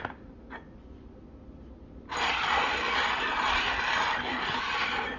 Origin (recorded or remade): recorded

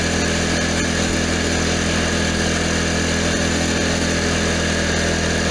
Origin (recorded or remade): recorded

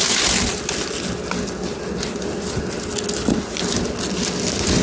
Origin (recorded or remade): recorded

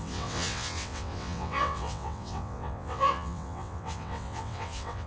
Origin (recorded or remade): remade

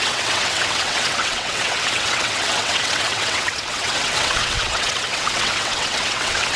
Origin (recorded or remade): remade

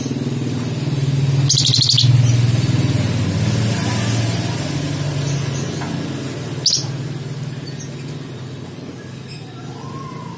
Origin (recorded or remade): recorded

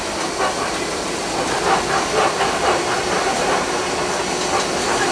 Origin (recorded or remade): recorded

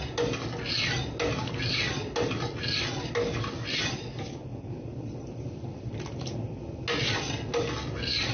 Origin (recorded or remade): recorded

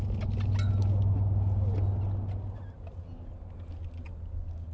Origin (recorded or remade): recorded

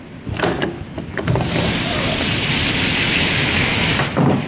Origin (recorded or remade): recorded